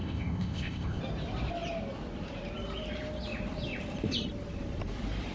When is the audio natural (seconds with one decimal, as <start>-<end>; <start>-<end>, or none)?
1.0-5.3